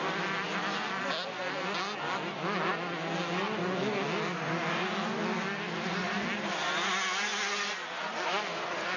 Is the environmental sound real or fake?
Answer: real